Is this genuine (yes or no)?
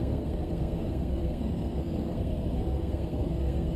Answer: no